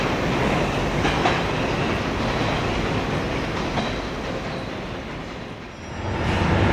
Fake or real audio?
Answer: real